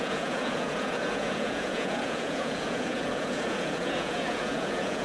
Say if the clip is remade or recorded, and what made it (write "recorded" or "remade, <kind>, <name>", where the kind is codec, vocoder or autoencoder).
remade, vocoder, Vocos